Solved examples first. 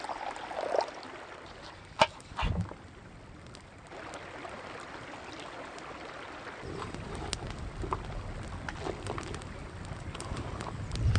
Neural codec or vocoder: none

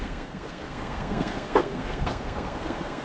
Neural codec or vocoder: codec, SNAC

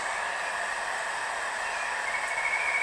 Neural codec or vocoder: none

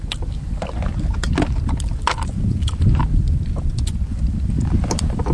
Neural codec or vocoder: none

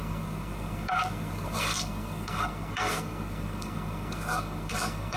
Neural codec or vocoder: codec, SNAC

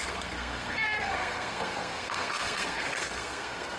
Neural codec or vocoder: codec, SNAC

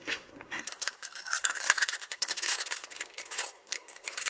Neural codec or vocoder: codec, SNAC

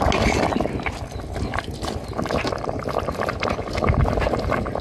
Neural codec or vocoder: none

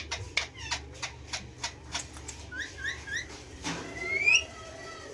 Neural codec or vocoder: none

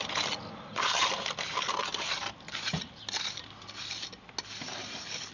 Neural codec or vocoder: none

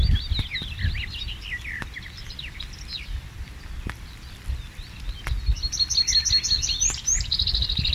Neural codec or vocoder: none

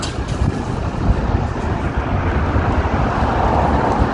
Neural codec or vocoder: none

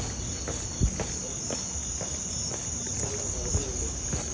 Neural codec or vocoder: none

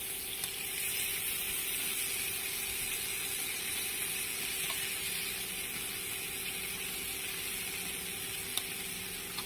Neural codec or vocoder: none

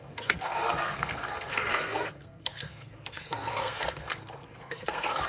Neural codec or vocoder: codec, SNAC